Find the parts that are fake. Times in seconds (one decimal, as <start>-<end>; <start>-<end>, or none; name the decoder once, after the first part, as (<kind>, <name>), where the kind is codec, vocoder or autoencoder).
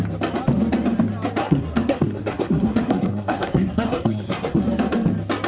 1.4-4.6 (codec, SNAC)